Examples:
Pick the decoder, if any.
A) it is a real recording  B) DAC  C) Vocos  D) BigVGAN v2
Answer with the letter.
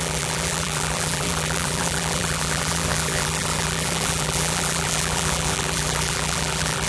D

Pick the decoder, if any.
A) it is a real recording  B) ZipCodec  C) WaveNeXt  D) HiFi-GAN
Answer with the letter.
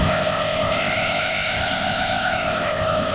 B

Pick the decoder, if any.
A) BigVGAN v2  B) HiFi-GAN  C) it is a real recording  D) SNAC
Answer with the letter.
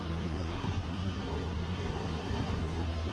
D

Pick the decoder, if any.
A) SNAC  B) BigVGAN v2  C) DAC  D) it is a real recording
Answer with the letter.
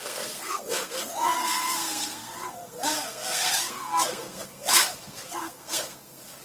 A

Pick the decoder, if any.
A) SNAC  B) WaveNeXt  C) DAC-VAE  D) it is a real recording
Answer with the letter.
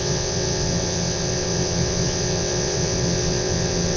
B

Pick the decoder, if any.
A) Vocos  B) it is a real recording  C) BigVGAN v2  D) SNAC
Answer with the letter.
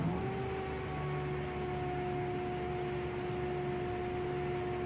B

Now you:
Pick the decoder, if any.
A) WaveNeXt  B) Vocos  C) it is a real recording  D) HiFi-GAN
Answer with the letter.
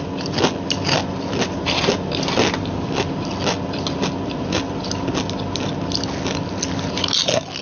C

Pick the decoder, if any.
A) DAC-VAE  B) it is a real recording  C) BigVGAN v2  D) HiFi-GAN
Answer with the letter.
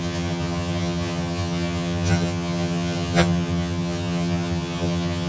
D